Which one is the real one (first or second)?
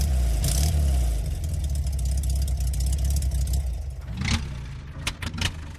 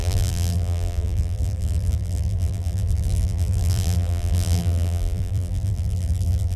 first